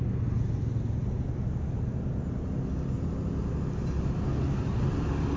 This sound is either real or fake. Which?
real